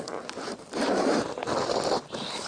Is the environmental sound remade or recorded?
recorded